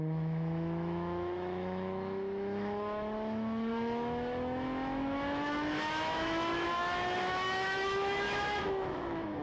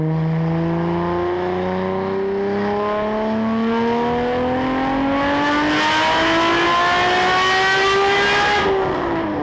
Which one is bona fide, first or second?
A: second